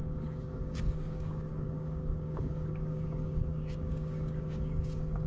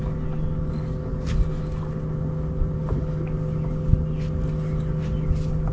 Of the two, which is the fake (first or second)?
first